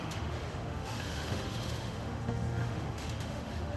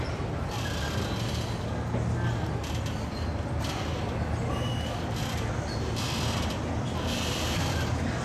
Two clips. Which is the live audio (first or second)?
second